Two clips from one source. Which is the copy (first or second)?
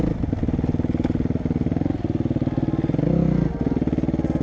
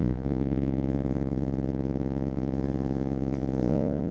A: second